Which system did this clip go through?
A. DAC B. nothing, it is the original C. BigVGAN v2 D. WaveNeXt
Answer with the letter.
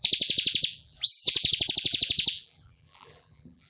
C